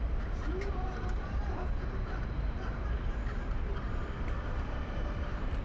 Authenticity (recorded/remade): remade